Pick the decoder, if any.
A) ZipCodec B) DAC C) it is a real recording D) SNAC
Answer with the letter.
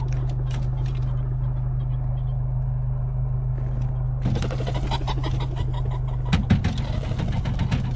C